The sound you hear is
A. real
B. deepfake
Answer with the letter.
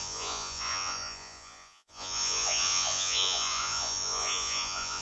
B